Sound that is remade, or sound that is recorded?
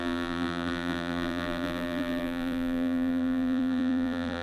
remade